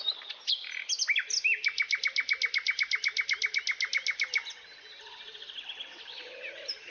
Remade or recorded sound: recorded